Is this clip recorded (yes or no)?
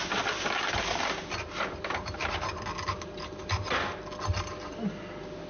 yes